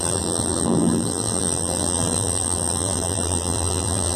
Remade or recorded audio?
remade